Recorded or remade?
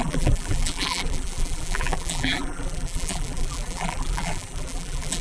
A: remade